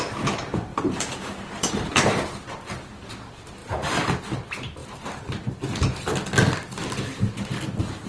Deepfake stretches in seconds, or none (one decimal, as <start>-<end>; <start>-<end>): 0.7-1.7; 3.6-4.2; 4.8-5.4